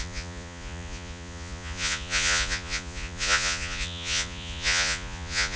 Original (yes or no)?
no